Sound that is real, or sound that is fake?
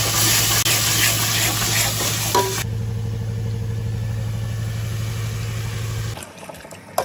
real